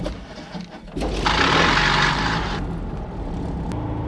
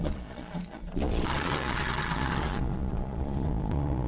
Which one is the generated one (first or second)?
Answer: second